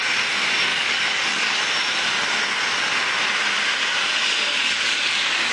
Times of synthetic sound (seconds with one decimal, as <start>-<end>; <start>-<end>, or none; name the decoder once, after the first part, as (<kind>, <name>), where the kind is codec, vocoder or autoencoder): 0.7-1.6 (codec, DAC); 4.6-5.5